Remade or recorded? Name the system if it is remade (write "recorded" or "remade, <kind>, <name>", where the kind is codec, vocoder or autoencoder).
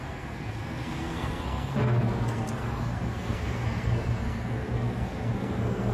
remade, codec, SNAC